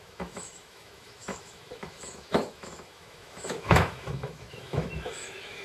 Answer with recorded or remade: remade